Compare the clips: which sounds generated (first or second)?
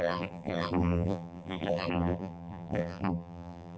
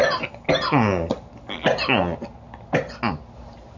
first